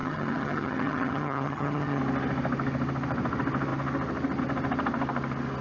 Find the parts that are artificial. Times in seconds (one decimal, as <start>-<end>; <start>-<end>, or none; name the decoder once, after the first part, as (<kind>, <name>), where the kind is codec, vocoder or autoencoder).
0.0-2.0 (vocoder, HiFi-GAN)